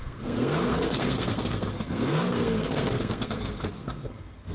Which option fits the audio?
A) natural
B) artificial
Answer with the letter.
B